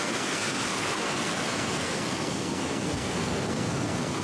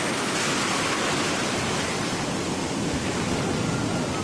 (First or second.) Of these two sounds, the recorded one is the second